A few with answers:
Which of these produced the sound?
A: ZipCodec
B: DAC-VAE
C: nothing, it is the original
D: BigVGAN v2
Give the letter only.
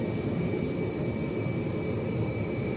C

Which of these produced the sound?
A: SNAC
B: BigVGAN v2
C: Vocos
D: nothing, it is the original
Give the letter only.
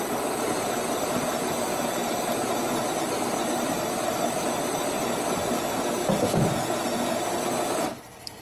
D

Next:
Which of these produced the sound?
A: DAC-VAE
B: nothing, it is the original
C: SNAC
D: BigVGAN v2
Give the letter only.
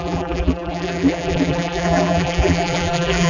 D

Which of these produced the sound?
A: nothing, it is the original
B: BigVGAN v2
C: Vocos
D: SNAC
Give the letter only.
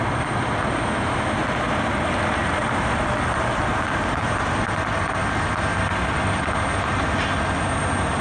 A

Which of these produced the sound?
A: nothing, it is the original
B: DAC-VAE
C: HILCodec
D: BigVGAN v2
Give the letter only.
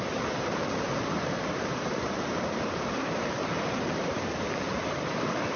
D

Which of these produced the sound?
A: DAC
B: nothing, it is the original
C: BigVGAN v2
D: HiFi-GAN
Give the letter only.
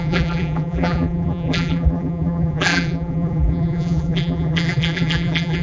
C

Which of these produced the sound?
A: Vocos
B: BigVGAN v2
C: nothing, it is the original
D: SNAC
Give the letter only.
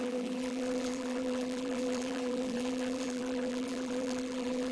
B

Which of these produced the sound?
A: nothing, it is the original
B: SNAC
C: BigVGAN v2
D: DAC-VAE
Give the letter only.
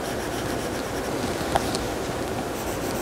A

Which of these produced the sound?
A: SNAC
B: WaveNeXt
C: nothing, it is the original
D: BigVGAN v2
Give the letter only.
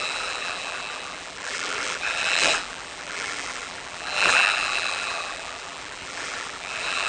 D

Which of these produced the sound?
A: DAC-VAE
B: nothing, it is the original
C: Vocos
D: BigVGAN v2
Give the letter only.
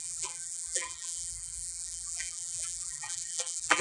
D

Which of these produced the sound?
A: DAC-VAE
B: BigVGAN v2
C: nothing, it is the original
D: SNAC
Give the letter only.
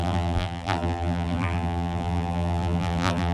B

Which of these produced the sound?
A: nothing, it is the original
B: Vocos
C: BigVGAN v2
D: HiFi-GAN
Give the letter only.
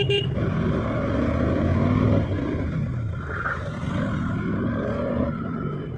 C